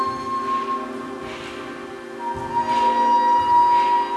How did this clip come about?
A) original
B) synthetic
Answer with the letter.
A